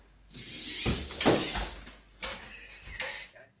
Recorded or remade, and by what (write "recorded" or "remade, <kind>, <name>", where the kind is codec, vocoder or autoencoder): recorded